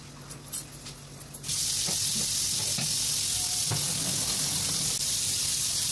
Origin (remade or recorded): recorded